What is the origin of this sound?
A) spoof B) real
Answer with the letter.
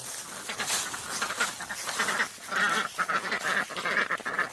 B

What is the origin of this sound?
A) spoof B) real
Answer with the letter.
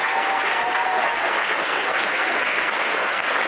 A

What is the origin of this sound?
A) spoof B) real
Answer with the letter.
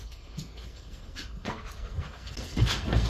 A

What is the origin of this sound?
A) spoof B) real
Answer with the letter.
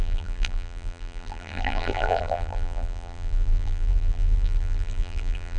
A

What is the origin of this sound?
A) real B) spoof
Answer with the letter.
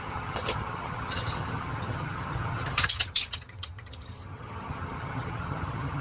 B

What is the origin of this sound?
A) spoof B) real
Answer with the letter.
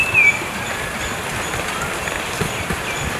B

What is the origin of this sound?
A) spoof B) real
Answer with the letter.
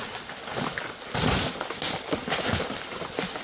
B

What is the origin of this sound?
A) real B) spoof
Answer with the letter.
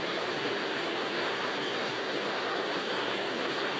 B